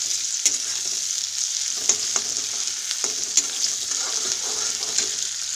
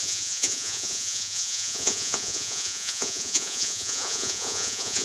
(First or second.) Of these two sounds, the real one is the first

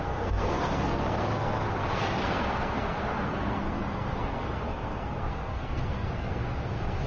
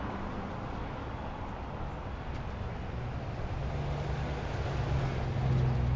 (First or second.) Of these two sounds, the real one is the second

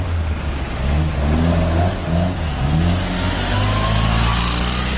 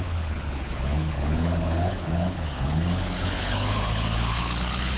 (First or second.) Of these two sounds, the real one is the first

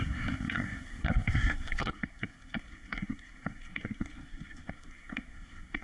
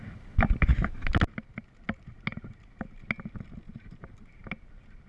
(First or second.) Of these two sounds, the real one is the second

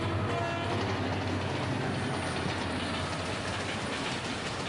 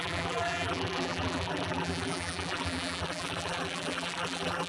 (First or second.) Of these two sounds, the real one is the first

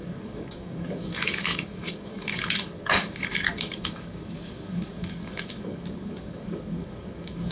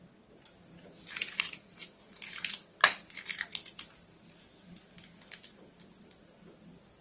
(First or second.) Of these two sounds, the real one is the second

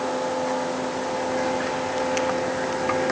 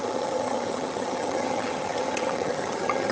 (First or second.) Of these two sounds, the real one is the first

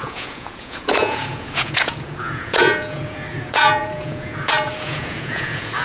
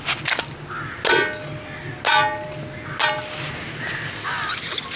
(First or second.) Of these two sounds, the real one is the second